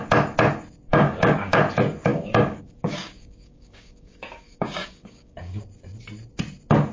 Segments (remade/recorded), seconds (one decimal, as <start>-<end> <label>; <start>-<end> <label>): 0.0-0.9 recorded; 0.9-1.6 remade; 1.6-2.1 recorded; 2.1-5.6 remade; 5.6-6.9 recorded